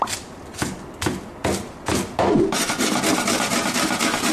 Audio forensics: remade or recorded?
recorded